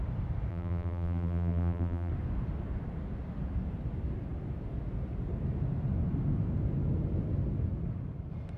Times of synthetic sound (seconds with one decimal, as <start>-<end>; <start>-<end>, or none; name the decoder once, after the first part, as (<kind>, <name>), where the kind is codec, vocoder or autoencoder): 0.5-2.1 (vocoder, BigVGAN v2)